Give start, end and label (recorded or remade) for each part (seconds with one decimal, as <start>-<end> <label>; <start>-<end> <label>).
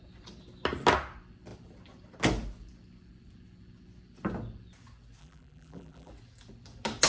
0.0-5.2 recorded; 5.2-6.1 remade; 6.1-7.1 recorded